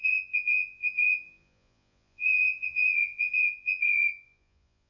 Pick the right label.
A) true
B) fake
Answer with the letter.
B